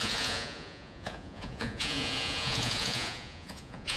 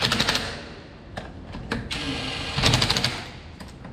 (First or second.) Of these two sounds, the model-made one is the first